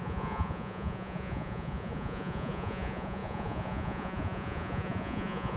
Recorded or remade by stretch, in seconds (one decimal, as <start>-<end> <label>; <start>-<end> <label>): 0.0-5.6 remade